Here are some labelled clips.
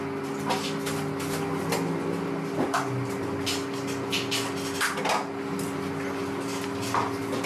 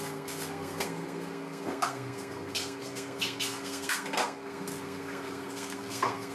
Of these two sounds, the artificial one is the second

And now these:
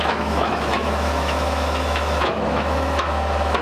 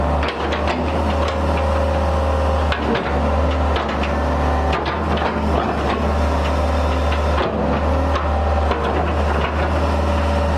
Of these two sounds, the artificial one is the first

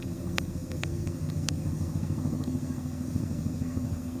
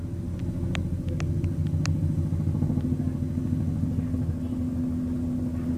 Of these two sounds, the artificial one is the first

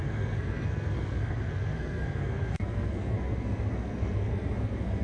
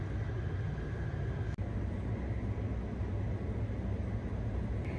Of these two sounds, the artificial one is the first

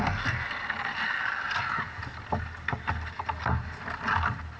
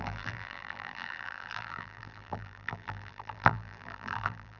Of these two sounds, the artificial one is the second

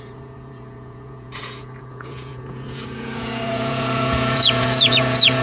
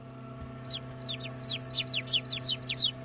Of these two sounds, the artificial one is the first